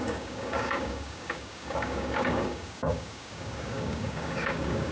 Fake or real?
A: fake